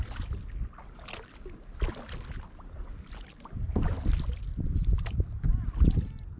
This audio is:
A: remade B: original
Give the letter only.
B